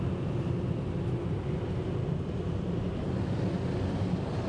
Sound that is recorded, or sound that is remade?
recorded